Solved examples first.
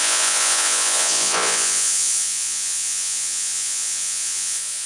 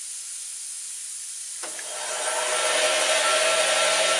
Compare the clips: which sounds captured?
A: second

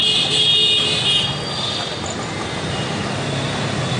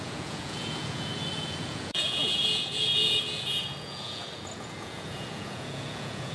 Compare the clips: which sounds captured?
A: first